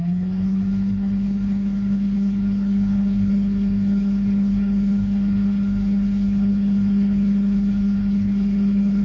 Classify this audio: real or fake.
fake